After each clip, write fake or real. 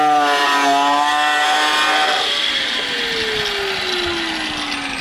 real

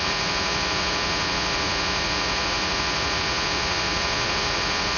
fake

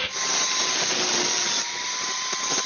real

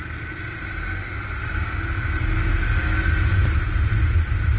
real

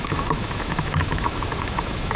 fake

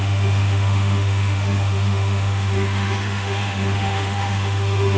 fake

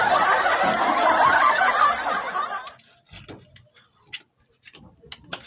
real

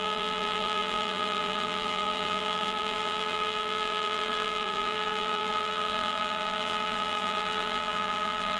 fake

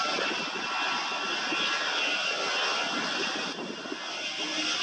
real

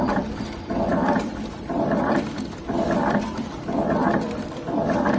fake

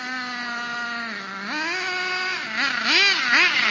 real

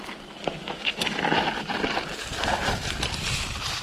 real